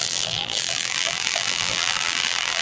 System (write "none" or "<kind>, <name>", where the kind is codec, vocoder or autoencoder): vocoder, BigVGAN v2